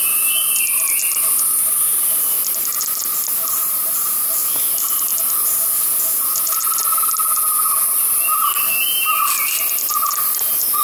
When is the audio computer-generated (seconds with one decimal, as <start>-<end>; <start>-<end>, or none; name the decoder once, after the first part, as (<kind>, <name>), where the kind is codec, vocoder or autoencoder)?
5.9-6.6 (vocoder, Vocos)